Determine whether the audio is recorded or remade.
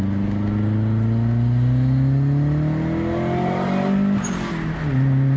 recorded